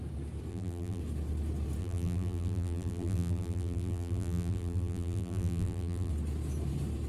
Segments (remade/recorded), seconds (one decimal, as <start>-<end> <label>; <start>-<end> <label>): 0.0-0.5 recorded; 0.5-1.0 remade; 1.0-1.8 recorded; 1.8-6.1 remade; 6.1-7.1 recorded